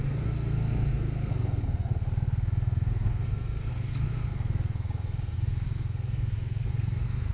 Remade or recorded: remade